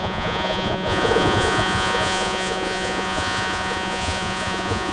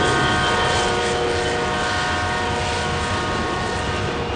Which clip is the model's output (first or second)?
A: first